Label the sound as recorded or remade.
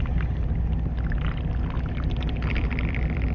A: recorded